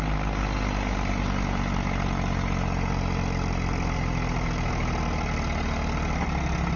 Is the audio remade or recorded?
recorded